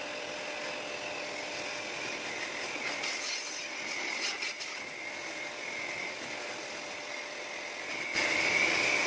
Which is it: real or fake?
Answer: real